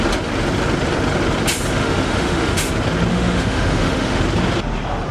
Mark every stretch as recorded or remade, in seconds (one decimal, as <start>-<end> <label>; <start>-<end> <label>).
0.0-1.8 recorded; 1.8-2.7 remade; 2.7-3.1 recorded; 3.1-4.2 remade; 4.2-5.1 recorded